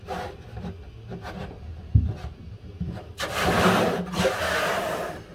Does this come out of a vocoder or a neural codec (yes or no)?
no